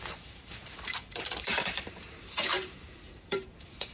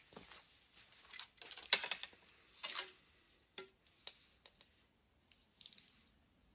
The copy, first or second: first